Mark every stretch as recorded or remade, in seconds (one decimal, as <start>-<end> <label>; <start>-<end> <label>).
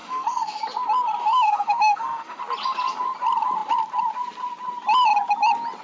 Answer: 0.0-0.6 remade; 0.6-1.2 recorded; 1.2-2.4 remade; 2.4-5.8 recorded